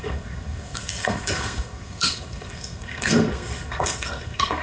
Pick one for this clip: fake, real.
fake